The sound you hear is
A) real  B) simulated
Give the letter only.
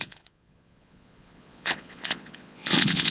B